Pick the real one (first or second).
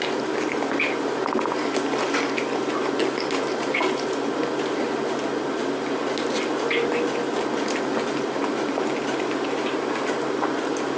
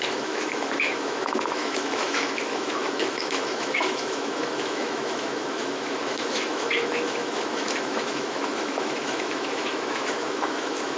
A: first